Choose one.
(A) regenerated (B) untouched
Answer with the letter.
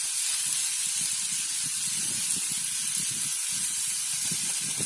B